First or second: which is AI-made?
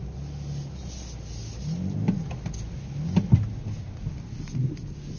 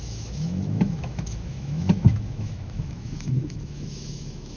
second